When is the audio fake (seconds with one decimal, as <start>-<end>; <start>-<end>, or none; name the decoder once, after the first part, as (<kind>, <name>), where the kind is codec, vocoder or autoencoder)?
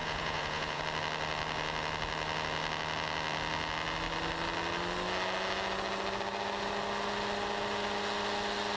0.0-0.8 (vocoder, Vocos)